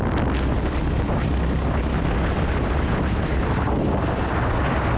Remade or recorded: recorded